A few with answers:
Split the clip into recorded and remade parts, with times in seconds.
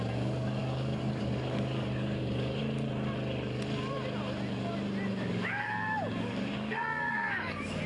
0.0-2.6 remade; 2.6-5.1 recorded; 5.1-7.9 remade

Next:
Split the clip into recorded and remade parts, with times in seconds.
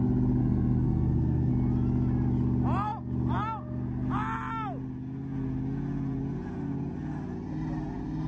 0.0-0.4 recorded; 0.4-1.5 remade; 1.5-8.3 recorded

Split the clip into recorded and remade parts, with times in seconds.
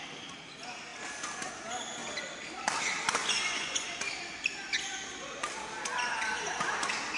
0.0-3.2 recorded; 3.2-4.0 remade; 4.0-7.2 recorded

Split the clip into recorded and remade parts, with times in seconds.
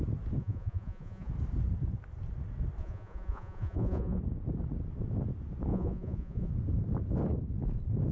0.0-0.4 recorded; 0.4-1.3 remade; 1.3-2.8 recorded; 2.8-4.2 remade; 4.2-5.7 recorded; 5.7-6.5 remade; 6.5-8.1 recorded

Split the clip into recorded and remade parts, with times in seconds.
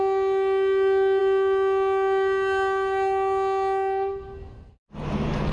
0.0-5.5 recorded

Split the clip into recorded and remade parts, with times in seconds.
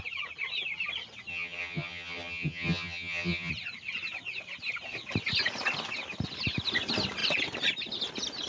0.0-1.3 recorded; 1.3-3.5 remade; 3.5-8.5 recorded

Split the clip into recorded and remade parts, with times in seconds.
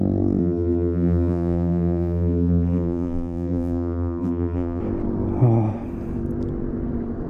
0.0-0.4 recorded; 0.4-4.8 remade; 4.8-7.3 recorded